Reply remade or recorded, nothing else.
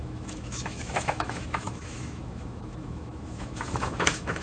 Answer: remade